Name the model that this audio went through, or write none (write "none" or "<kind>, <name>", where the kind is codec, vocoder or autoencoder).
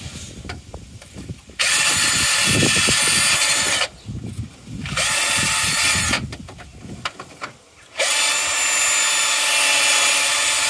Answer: none